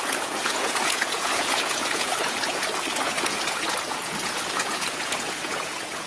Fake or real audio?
fake